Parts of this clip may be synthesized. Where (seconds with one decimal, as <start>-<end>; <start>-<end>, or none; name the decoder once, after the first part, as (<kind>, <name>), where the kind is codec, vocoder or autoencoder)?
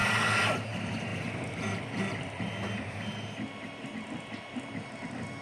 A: none